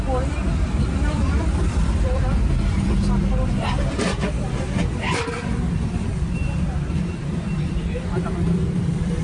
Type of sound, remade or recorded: remade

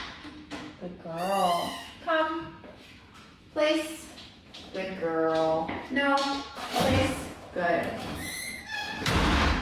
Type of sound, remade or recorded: remade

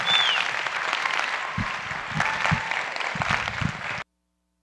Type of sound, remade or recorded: recorded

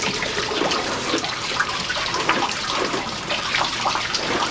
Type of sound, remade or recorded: remade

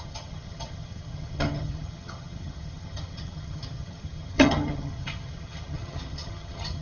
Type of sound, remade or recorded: remade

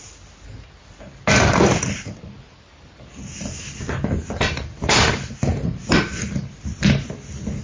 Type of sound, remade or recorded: recorded